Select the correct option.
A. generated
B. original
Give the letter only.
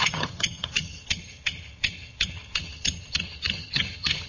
A